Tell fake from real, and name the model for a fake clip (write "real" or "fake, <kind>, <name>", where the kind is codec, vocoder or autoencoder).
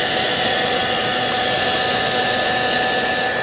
real